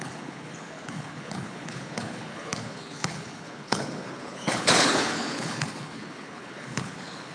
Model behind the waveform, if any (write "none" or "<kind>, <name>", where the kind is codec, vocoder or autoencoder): codec, HILCodec